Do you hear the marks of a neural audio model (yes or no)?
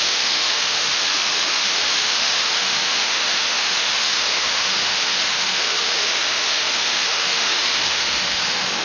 yes